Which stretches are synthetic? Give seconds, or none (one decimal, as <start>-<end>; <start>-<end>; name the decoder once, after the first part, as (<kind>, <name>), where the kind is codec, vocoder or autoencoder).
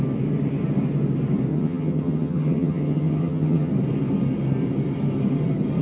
1.5-3.7 (vocoder, HiFi-GAN)